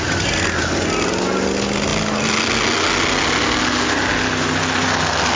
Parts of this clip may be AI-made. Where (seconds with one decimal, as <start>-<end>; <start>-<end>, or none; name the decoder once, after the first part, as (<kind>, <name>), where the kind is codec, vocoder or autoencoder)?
none

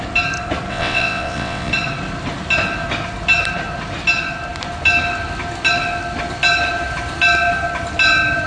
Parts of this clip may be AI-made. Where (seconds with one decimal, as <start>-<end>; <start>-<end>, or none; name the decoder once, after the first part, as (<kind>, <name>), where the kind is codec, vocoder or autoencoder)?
0.7-1.7 (vocoder, WaveNeXt)

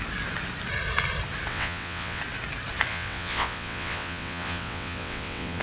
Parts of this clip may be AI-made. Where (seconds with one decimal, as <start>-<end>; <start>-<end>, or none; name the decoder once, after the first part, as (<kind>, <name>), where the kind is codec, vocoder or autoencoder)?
1.5-2.2 (vocoder, WaveNeXt); 2.9-5.6

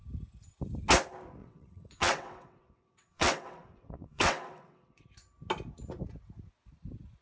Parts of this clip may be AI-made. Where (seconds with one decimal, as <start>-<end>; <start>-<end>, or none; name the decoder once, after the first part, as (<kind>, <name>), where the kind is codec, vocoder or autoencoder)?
1.4-5.0 (vocoder, WaveNeXt)

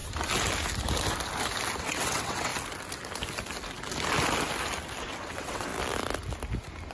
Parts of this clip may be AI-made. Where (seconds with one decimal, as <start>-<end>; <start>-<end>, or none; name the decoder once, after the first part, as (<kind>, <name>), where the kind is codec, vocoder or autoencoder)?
1.8-2.5 (vocoder, WaveNeXt); 5.0-5.7